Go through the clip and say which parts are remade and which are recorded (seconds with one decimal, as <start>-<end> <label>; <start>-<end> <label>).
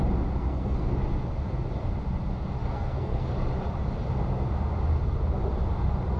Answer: 0.0-0.4 recorded; 0.4-0.9 remade; 0.9-2.6 recorded; 2.6-3.3 remade; 3.3-6.2 recorded